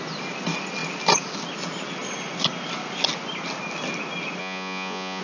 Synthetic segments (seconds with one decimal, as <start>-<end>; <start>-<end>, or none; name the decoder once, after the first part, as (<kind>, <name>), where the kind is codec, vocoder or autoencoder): 4.4-5.2 (vocoder, Vocos)